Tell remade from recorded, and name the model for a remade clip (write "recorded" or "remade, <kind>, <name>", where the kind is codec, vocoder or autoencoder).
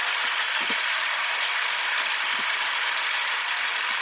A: recorded